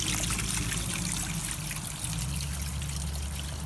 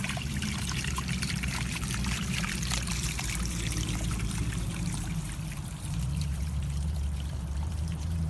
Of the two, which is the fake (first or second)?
second